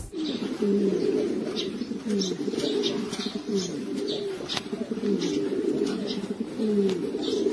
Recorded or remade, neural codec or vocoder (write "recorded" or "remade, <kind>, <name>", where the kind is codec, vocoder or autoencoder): recorded